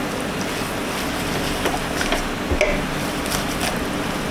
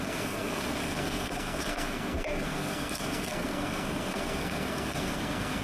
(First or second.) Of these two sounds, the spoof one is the second